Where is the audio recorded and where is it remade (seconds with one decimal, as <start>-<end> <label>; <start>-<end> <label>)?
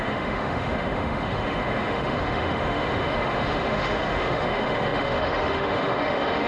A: 0.0-6.5 remade